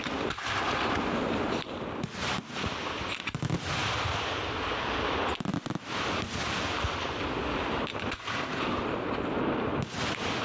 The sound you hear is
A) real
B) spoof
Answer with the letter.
A